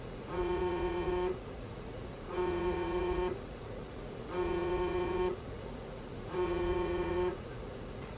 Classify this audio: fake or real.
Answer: fake